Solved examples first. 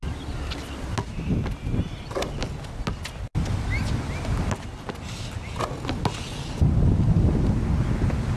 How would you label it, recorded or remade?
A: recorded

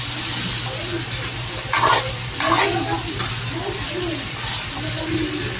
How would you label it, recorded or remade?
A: recorded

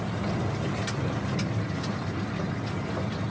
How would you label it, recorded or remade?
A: recorded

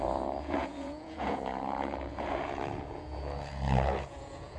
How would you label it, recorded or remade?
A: remade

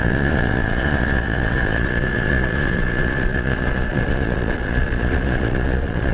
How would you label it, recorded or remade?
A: remade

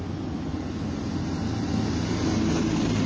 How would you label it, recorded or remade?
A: recorded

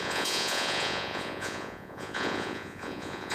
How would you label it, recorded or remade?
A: remade